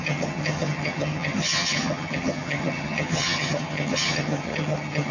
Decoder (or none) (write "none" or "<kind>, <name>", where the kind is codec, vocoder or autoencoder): vocoder, HiFi-GAN